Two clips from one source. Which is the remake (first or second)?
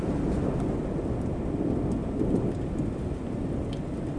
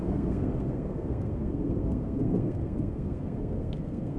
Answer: second